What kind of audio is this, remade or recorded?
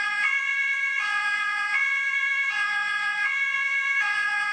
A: remade